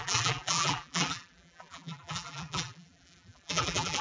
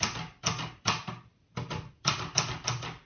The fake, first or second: first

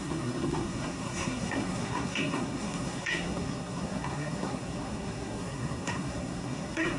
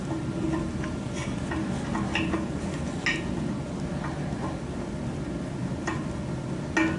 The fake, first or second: first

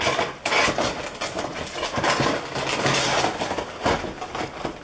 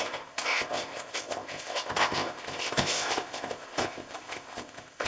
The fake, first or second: second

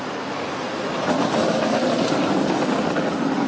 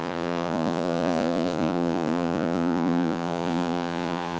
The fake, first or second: second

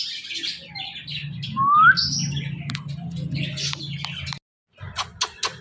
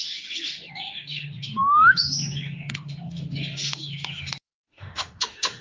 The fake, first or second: second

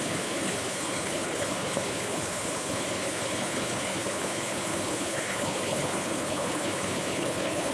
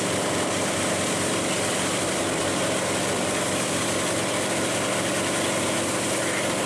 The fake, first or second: first